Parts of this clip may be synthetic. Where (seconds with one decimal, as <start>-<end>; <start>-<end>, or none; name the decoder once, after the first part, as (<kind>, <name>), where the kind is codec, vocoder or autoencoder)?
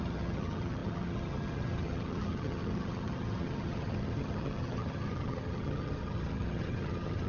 0.0-7.3 (vocoder, HiFi-GAN)